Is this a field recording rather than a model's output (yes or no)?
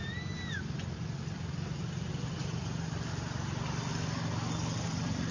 yes